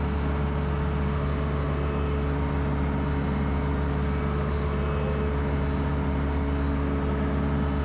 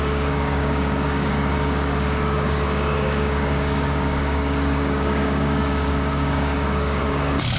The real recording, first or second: first